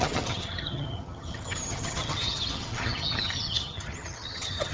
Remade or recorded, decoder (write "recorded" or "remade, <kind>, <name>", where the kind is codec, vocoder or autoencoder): remade, vocoder, HiFi-GAN